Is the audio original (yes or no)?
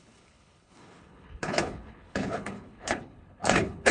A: no